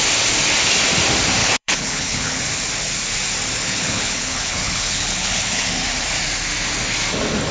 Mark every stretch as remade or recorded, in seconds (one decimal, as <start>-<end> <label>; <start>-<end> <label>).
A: 0.0-1.4 recorded; 1.4-2.4 remade; 2.4-3.6 recorded; 3.6-5.7 remade; 5.7-7.5 recorded